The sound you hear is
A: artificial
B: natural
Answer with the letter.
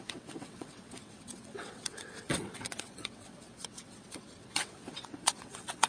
A